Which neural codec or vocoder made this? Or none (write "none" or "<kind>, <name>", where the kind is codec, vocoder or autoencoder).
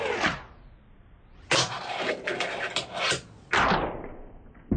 none